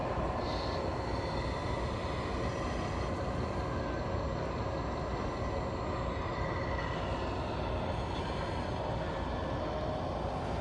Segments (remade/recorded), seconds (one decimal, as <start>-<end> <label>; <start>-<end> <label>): 0.0-10.6 recorded